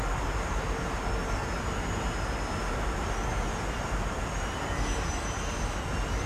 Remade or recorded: recorded